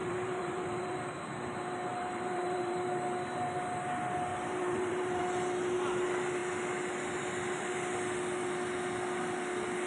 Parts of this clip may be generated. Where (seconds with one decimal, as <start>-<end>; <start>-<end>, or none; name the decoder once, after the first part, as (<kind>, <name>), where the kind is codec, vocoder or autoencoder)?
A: 0.0-1.0 (vocoder, BigVGAN v2); 1.9-2.7; 4.3-5.2